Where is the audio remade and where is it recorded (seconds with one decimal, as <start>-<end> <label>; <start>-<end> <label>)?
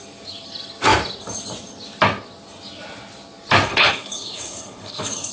0.0-3.7 recorded; 3.7-5.3 remade